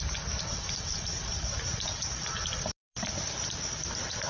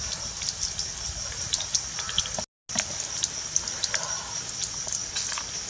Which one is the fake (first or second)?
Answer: first